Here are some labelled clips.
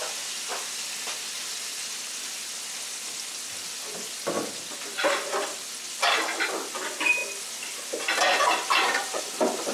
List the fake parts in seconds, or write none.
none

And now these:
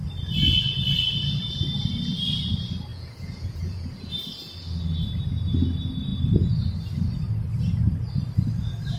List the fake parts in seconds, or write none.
2.9-4.1

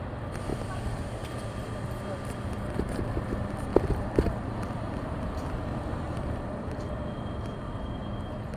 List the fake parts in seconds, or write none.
0.5-1.1; 3.7-6.9; 8.0-8.6

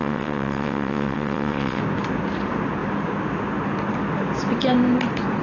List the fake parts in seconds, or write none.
0.0-1.8